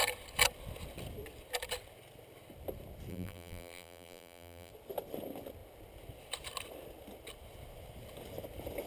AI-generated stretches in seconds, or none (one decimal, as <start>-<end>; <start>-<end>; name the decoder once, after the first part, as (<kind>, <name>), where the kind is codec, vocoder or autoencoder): 3.1-4.7 (vocoder, BigVGAN v2)